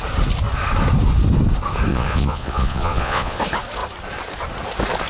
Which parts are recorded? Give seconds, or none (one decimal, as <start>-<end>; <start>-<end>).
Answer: 0.0-1.9; 3.4-5.1